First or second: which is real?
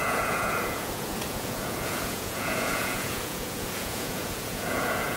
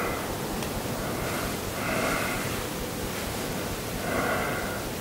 second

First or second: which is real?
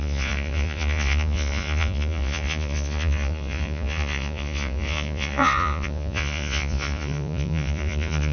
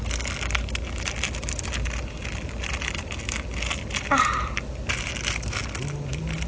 second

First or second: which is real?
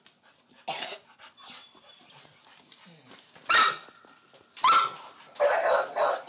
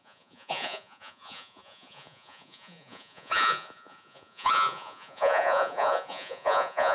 first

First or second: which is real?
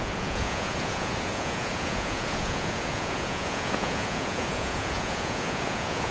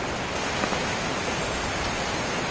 second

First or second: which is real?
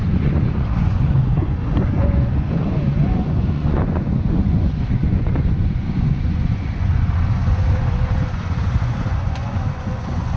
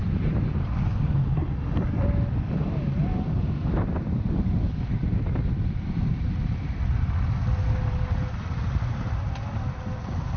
second